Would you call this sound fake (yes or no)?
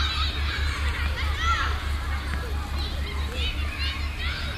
no